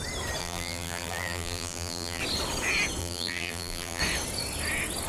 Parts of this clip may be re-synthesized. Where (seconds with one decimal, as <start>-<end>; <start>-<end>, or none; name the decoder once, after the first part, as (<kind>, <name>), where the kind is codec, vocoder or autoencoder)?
0.4-2.2 (vocoder, BigVGAN v2); 3.0-4.0